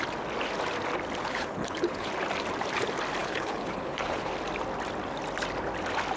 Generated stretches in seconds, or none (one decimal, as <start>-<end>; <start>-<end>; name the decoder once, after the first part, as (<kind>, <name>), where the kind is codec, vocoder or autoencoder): 1.2-2.1 (codec, HILCodec); 3.2-4.3